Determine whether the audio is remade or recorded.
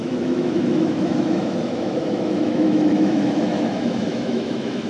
remade